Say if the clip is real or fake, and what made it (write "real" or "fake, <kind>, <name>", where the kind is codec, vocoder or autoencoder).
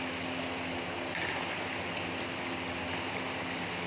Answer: real